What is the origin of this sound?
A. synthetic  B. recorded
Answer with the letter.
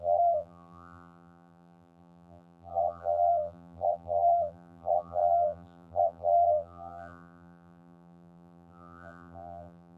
A